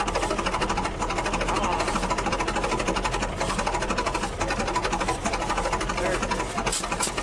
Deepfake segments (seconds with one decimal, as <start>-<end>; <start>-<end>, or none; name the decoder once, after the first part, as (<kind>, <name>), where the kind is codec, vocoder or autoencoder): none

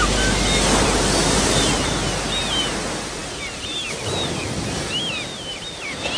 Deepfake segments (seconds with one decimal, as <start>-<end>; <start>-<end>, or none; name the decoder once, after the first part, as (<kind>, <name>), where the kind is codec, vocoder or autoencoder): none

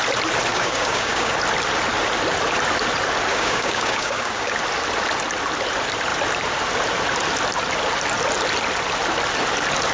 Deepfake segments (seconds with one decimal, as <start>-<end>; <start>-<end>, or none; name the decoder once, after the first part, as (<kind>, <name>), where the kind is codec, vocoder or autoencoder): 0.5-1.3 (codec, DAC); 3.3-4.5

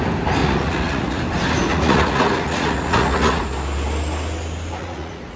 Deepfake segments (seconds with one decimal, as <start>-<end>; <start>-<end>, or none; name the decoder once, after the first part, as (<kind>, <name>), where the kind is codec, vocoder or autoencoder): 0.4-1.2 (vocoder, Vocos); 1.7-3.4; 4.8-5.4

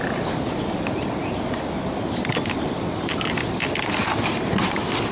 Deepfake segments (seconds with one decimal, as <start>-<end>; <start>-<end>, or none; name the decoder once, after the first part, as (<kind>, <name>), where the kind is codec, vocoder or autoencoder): none